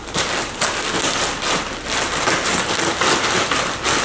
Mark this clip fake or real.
real